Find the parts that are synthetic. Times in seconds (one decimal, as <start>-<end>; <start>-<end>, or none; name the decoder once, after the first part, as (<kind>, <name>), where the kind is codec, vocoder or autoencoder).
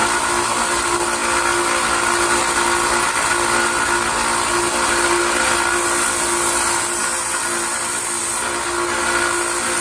none